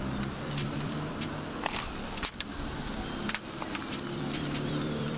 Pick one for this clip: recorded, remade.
remade